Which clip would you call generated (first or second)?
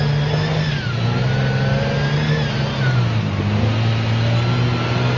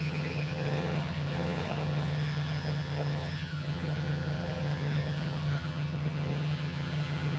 second